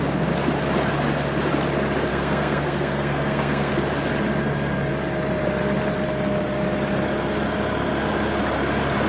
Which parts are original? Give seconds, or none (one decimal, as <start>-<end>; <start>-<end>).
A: 0.0-2.1; 3.7-9.1